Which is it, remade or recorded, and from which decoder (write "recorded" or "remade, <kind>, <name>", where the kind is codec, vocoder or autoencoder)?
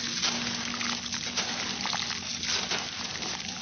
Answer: recorded